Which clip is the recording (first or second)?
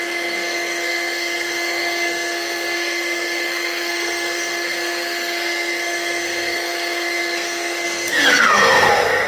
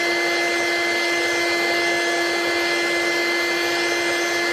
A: second